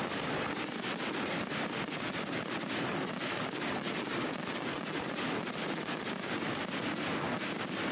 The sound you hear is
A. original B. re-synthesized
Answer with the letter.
A